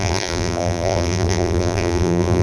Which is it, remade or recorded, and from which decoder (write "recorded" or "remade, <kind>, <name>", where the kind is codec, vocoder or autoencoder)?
remade, vocoder, BigVGAN v2